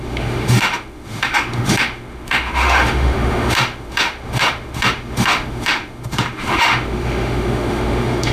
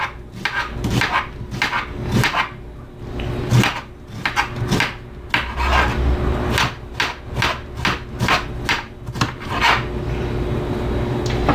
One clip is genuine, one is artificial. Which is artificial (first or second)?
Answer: first